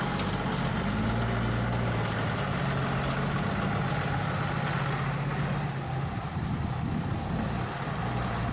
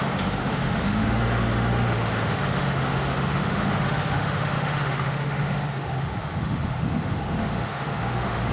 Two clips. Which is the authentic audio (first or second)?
first